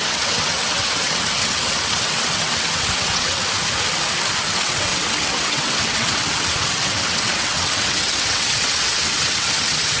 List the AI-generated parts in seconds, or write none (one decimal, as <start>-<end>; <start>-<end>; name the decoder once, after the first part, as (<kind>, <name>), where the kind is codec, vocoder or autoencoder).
0.0-3.4 (vocoder, WaveNeXt); 4.4-10.0